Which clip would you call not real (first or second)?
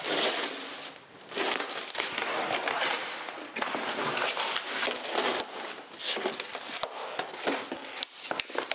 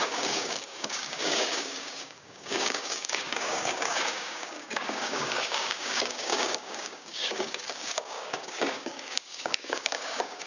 second